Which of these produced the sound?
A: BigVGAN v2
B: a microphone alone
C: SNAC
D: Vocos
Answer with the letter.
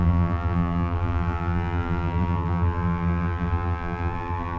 A